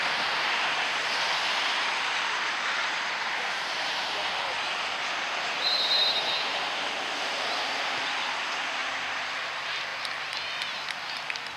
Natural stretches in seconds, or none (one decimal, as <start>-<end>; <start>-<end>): none

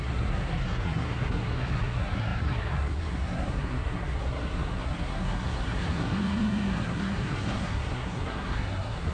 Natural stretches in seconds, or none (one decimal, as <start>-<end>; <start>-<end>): none

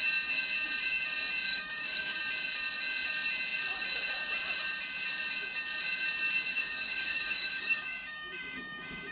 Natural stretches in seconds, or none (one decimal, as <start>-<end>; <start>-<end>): 0.0-1.5; 2.2-6.5

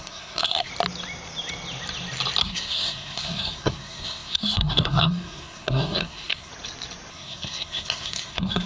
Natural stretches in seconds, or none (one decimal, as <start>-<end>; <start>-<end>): 0.7-2.4; 6.5-7.1

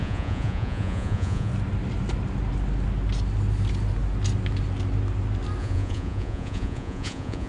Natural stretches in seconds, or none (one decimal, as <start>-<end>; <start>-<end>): 1.5-5.6